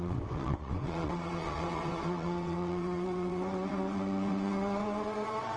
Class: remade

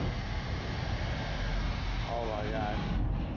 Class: recorded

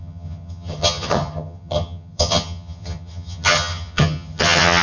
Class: remade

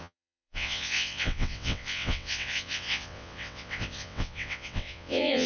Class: remade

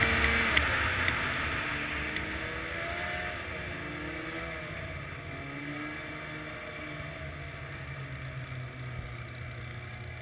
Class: recorded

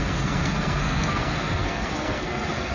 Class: remade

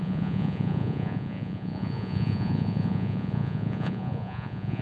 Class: remade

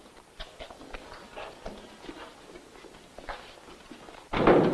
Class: recorded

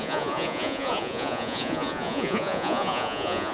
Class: remade